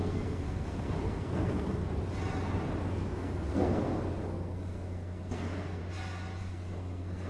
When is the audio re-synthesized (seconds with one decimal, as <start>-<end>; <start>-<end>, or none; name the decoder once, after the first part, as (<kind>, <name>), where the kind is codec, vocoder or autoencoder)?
0.0-1.8 (codec, SNAC); 2.8-5.8; 6.4-7.3